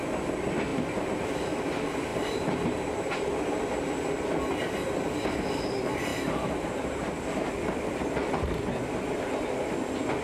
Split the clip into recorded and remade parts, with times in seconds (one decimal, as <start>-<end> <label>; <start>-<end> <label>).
0.0-0.7 recorded; 0.7-1.6 remade; 1.6-2.1 recorded; 2.1-3.2 remade; 3.2-6.1 recorded; 6.1-7.5 remade; 7.5-10.2 recorded